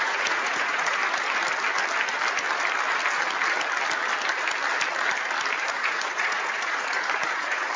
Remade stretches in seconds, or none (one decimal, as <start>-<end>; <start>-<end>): 0.0-1.0; 5.6-7.8